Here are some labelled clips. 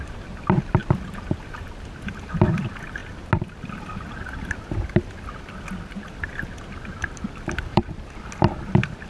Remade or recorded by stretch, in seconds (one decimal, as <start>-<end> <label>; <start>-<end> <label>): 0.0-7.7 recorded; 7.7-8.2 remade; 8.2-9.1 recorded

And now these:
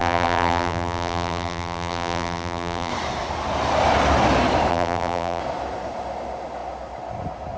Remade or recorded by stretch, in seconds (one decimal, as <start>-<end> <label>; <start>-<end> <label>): 0.0-2.9 remade; 2.9-4.7 recorded; 4.7-5.4 remade; 5.4-7.6 recorded

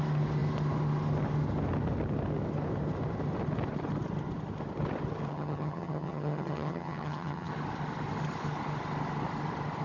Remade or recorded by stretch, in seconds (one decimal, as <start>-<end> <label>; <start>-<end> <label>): 0.0-5.3 recorded; 5.3-7.5 remade; 7.5-9.8 recorded